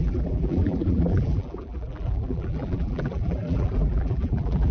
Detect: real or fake fake